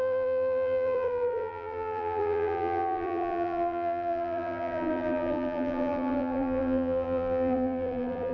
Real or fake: fake